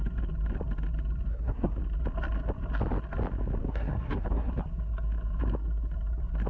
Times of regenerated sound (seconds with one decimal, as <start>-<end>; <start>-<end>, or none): 1.3-1.8; 3.6-4.5